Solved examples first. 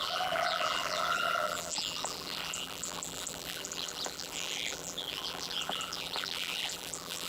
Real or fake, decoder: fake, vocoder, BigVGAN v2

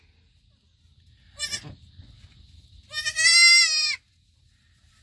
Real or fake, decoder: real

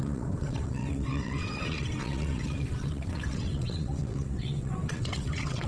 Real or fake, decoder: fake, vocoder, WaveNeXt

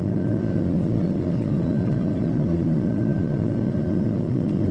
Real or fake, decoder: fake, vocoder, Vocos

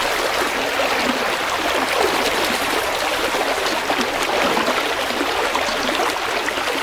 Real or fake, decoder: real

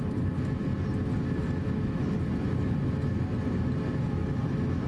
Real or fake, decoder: real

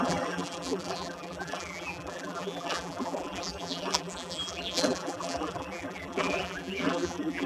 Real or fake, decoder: fake, vocoder, BigVGAN v2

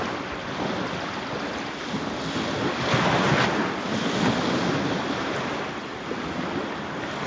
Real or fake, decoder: real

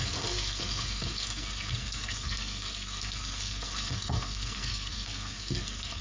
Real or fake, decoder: fake, codec, SNAC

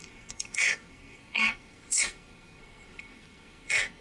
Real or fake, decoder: fake, codec, SNAC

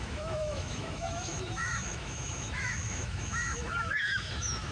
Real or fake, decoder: fake, autoencoder, DAC-VAE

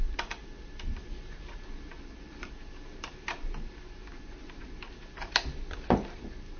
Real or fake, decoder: real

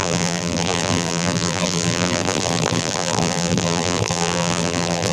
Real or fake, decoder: fake, vocoder, BigVGAN v2